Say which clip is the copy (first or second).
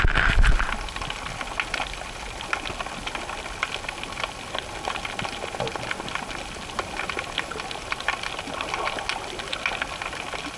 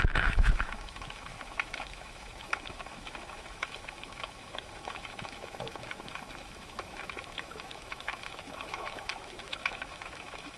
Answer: second